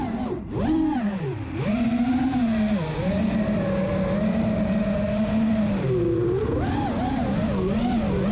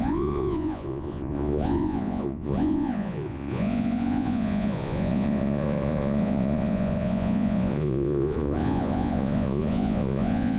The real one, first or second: first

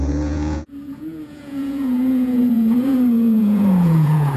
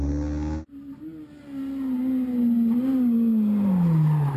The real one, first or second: second